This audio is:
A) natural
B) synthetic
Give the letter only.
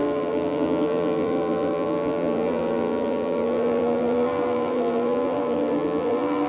B